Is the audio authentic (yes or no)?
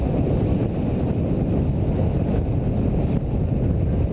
yes